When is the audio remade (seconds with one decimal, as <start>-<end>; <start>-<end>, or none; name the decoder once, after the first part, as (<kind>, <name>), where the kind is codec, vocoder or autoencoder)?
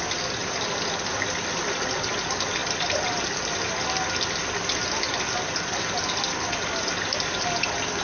none